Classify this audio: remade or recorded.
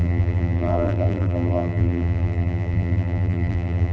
remade